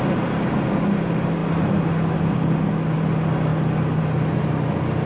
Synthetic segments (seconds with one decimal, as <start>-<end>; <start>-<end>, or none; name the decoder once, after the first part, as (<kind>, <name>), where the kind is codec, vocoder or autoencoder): none